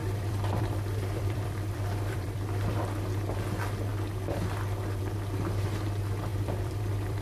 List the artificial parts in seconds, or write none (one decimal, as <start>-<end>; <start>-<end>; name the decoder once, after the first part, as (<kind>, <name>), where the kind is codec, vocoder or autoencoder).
0.0-2.8 (vocoder, BigVGAN v2); 6.3-7.2